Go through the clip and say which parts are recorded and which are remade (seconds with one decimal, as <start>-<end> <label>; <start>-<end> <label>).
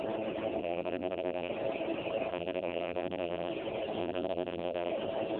0.0-0.6 recorded; 0.6-1.5 remade; 1.5-2.3 recorded; 2.3-3.5 remade; 3.5-4.0 recorded; 4.0-4.9 remade; 4.9-5.4 recorded